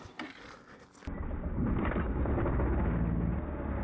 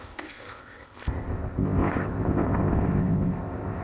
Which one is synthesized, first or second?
second